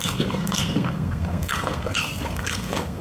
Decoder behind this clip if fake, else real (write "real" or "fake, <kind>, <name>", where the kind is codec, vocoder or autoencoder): fake, codec, SNAC